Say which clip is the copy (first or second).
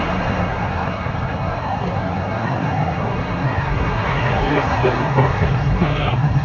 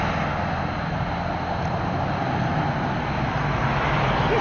first